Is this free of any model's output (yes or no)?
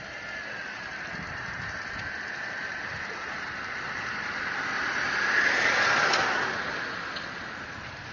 yes